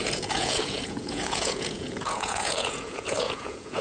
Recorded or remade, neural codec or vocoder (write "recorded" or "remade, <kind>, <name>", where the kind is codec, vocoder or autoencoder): remade, vocoder, Vocos